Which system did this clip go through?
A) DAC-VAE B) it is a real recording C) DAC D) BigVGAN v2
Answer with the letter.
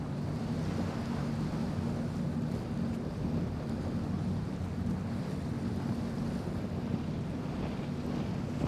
B